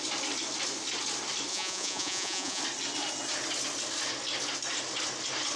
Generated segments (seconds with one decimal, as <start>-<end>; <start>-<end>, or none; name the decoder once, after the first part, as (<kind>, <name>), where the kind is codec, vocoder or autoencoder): 1.5-2.6 (vocoder, Vocos)

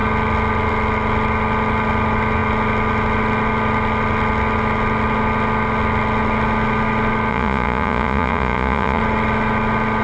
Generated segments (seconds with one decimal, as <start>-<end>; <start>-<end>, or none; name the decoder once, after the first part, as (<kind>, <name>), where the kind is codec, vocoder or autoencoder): 7.3-9.0 (vocoder, Vocos)

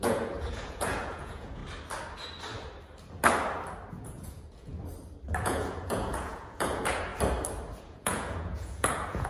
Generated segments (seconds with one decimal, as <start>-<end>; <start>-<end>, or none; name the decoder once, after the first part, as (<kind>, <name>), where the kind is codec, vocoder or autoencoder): 0.0-1.6 (vocoder, Vocos); 3.9-4.7; 5.4-7.1; 7.8-9.3

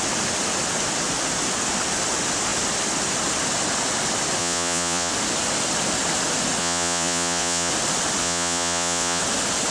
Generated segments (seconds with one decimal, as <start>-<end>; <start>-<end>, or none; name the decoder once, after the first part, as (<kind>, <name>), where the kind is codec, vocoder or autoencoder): 4.4-5.1 (vocoder, Vocos); 6.6-7.7; 8.2-9.2

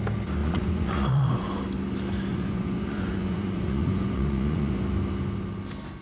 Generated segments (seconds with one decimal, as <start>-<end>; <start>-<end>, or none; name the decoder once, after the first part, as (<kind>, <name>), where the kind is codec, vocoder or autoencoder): 0.4-1.6 (vocoder, Vocos); 2.3-4.7

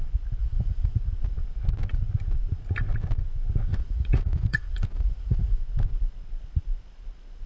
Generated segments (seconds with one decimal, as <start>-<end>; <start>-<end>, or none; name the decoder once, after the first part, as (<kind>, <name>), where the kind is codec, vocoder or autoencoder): 0.4-1.0 (vocoder, Vocos); 3.7-5.6

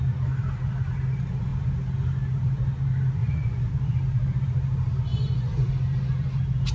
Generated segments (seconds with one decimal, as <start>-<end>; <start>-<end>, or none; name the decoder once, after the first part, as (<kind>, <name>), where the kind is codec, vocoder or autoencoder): 3.2-3.7 (vocoder, Vocos); 5.1-5.7